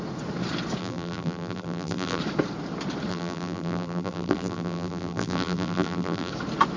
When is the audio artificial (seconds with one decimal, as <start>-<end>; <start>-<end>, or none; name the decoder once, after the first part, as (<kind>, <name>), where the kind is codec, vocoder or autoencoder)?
0.8-2.2 (vocoder, BigVGAN v2); 3.1-6.3